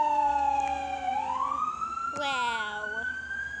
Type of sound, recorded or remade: recorded